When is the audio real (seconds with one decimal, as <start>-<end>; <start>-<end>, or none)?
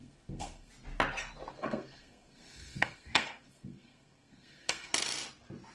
0.7-1.5; 4.9-5.7